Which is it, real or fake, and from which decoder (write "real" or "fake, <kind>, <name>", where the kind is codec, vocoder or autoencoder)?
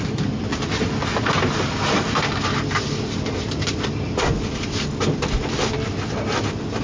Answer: real